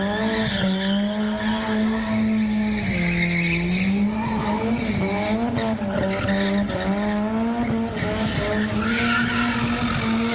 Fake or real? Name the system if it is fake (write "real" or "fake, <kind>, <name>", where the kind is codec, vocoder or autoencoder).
real